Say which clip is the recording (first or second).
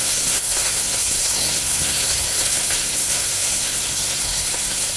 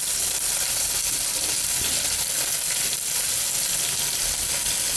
second